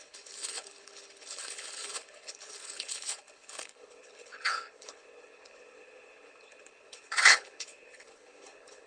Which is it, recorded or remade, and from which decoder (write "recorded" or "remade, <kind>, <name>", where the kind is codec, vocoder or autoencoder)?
remade, codec, HILCodec